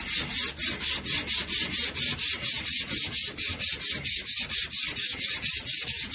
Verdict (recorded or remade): recorded